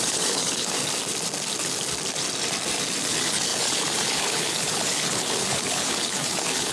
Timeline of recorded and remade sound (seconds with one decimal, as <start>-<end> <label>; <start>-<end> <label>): 0.0-0.8 remade; 0.8-3.1 recorded; 3.1-6.7 remade